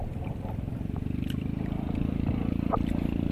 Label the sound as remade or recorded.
recorded